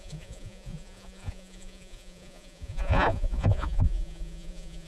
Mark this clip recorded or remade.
remade